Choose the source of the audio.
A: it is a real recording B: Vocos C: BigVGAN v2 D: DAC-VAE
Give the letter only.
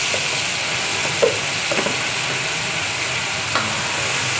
A